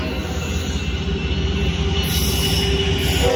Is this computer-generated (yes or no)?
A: no